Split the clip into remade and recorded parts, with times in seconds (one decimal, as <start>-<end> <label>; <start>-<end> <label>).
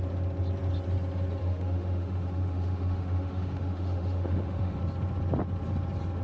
0.0-1.4 recorded; 1.4-4.8 remade; 4.8-6.2 recorded